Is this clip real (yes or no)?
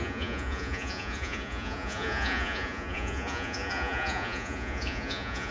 no